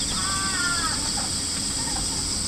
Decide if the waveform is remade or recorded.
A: recorded